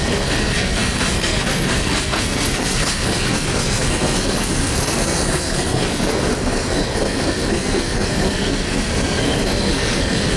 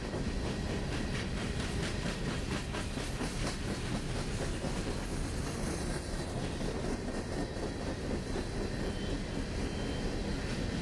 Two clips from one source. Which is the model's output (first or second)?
first